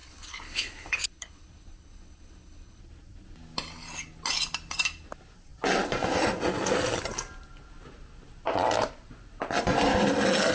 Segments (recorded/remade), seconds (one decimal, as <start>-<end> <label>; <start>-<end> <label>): 0.0-2.8 remade; 2.8-10.5 recorded